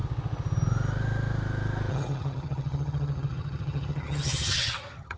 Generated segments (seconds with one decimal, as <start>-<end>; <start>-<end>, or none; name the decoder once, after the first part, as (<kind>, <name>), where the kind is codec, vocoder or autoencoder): 1.9-5.2 (vocoder, HiFi-GAN)